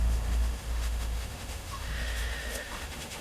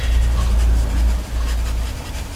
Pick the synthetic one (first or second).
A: first